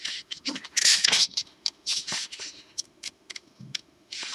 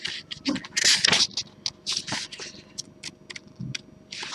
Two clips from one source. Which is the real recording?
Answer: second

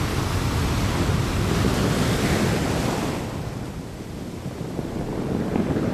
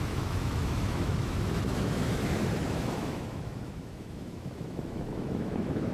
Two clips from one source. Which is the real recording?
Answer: first